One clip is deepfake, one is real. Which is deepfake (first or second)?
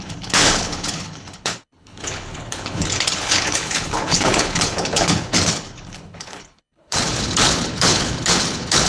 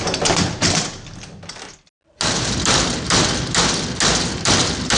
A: first